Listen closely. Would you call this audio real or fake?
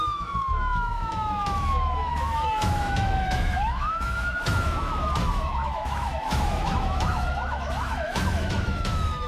fake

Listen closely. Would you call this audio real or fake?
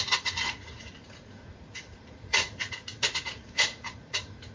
fake